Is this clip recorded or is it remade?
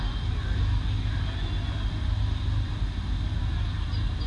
recorded